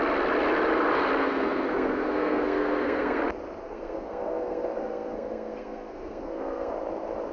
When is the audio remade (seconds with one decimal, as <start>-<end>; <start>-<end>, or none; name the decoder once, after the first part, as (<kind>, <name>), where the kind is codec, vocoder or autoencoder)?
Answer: 1.2-3.2 (codec, SNAC); 3.6-6.7